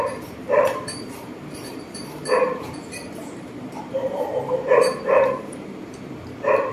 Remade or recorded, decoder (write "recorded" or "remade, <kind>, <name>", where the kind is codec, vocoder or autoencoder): remade, vocoder, BigVGAN v2